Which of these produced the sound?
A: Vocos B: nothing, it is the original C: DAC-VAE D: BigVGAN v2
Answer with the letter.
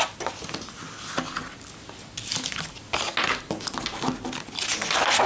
B